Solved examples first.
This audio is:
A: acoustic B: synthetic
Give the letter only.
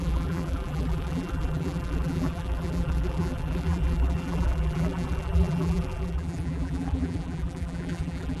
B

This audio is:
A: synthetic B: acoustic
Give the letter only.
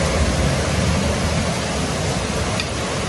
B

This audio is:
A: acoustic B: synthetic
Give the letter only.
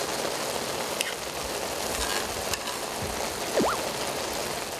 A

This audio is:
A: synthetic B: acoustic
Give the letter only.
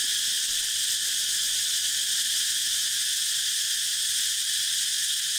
B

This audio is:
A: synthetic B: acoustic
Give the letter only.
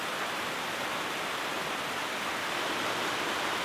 B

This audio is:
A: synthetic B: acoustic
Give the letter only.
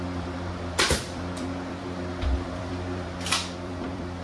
A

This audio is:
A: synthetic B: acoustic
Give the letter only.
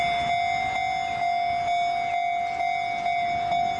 B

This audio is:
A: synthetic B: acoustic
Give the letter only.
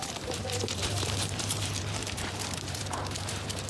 A